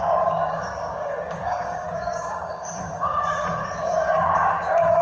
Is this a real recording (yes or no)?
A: no